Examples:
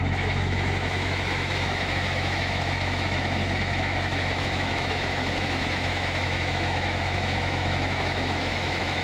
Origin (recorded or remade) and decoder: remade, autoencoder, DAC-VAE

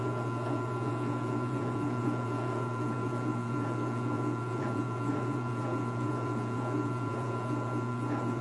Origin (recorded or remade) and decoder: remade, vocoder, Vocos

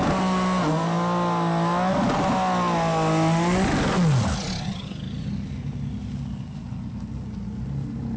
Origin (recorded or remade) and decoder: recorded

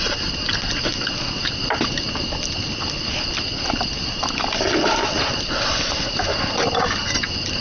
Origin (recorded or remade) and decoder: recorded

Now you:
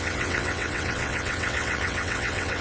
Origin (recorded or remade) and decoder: remade, vocoder, WaveNeXt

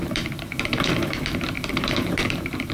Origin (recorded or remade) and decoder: remade, vocoder, BigVGAN v2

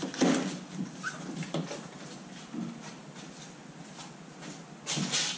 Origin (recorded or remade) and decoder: recorded